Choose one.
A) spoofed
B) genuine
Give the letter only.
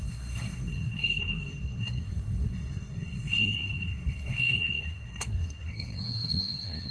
A